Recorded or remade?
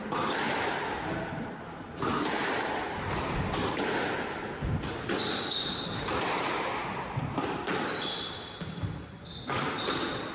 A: recorded